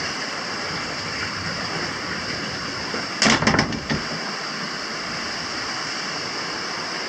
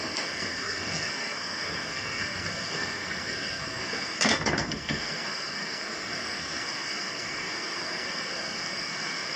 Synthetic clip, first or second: second